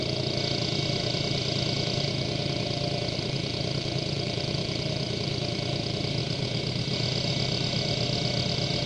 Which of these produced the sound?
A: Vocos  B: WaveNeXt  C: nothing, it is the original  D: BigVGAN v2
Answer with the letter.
C